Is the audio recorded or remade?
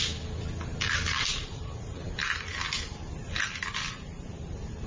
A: recorded